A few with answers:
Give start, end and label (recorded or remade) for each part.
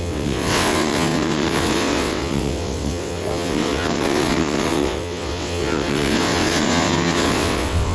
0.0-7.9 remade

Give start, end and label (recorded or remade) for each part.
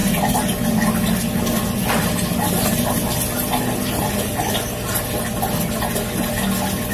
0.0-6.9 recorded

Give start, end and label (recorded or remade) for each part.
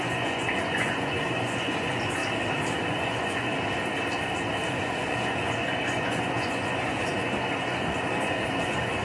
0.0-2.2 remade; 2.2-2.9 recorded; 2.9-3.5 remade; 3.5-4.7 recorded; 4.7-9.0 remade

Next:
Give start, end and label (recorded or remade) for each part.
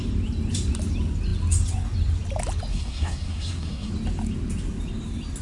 0.0-2.7 recorded; 2.7-3.9 remade; 3.9-5.4 recorded